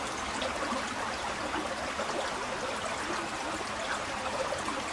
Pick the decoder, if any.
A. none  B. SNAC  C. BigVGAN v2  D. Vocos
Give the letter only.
A